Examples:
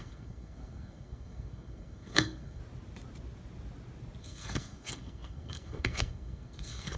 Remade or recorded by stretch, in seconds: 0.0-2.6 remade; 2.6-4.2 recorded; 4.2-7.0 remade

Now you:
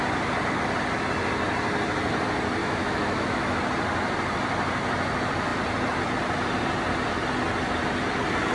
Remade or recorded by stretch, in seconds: 0.0-2.6 recorded; 2.6-3.6 remade; 3.6-8.5 recorded

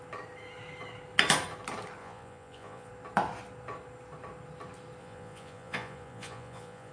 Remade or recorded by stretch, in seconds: 0.0-2.0 recorded; 2.0-2.9 remade; 2.9-5.0 recorded; 5.0-6.9 remade

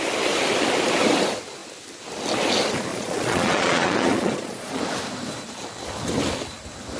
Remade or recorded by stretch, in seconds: 0.0-2.9 recorded; 2.9-4.8 remade; 4.8-7.0 recorded

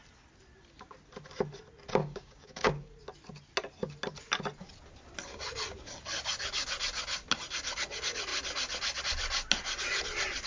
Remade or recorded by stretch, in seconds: 0.0-2.0 recorded; 2.0-2.9 remade; 2.9-10.5 recorded

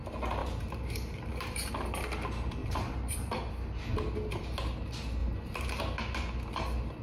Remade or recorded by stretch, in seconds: 0.0-0.4 recorded; 0.4-1.7 remade; 1.7-2.6 recorded; 2.6-3.5 remade; 3.5-5.2 recorded; 5.2-5.8 remade; 5.8-7.0 recorded

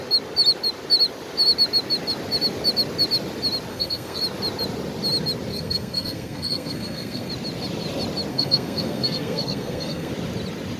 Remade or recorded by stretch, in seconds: 0.0-3.7 recorded; 3.7-4.2 remade; 4.2-5.5 recorded; 5.5-7.3 remade; 7.3-8.3 recorded; 8.3-10.1 remade; 10.1-10.8 recorded